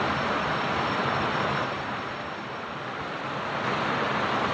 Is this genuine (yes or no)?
yes